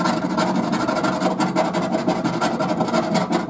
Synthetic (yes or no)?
no